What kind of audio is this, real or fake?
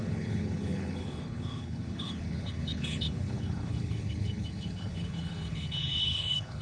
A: fake